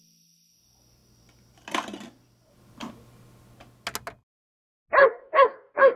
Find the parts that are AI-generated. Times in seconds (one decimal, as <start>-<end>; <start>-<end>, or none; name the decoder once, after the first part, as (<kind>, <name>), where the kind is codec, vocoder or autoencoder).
5.0-6.0 (codec, DAC)